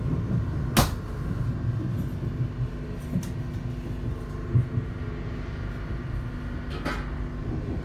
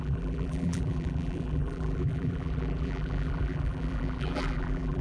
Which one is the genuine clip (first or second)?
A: first